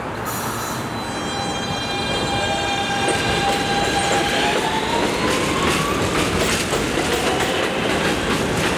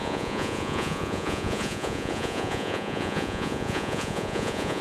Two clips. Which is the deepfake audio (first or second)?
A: second